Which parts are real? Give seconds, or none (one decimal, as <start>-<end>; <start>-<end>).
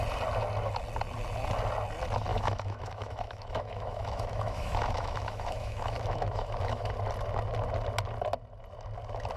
0.0-2.3; 6.9-9.4